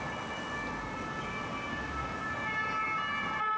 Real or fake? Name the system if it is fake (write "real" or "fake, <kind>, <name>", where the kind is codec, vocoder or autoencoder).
real